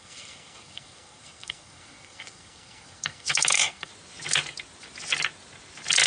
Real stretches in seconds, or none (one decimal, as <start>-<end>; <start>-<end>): 3.9-6.1